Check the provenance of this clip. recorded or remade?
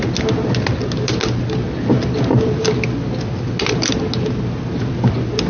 recorded